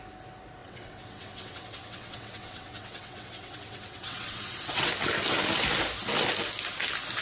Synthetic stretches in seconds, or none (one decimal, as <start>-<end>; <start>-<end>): 0.6-4.9